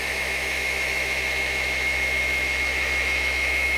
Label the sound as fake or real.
fake